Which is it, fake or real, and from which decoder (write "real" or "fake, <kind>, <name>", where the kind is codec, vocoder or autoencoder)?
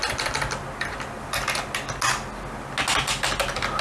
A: real